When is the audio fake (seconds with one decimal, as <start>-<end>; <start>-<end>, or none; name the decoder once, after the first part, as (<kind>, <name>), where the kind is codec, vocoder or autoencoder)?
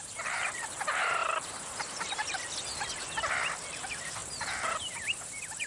0.0-2.2 (vocoder, BigVGAN v2); 3.6-5.7